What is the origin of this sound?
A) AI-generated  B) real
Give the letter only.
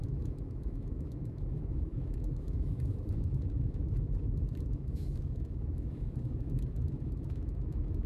A